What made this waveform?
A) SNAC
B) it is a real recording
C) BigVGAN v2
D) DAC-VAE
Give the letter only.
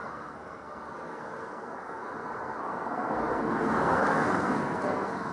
A